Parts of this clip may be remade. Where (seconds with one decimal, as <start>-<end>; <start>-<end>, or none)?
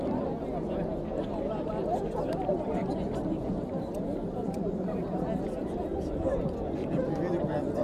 none